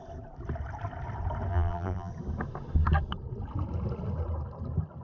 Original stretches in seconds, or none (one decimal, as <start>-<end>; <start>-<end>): 0.0-1.5; 2.1-5.0